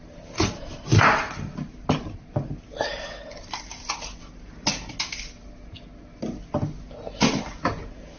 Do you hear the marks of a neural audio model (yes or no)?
no